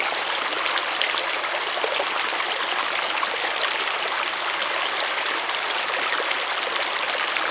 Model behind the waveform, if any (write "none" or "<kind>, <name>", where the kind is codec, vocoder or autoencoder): none